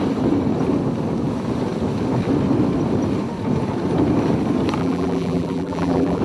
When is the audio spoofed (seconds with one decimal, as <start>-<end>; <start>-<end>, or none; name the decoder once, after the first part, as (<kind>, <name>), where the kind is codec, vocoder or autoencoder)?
4.8-6.2 (vocoder, BigVGAN v2)